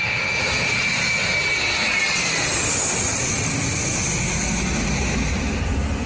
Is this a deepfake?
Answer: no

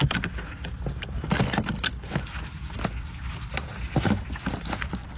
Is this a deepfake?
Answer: no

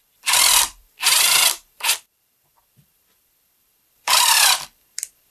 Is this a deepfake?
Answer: yes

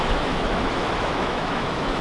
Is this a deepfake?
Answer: yes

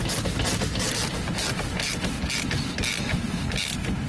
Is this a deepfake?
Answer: no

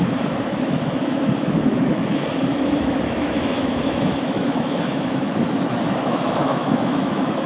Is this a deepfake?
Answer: yes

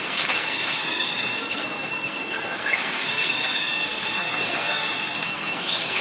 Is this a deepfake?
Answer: yes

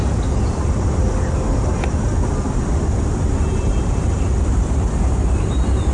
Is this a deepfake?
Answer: no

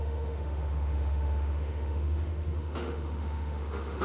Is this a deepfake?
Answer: yes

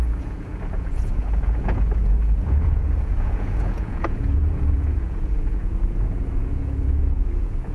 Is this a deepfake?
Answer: yes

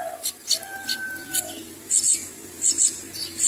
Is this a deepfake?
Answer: no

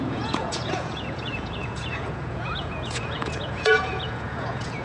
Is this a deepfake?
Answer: yes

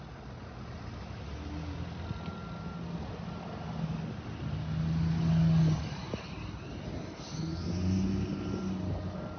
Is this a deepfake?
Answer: no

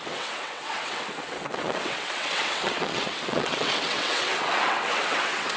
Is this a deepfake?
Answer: yes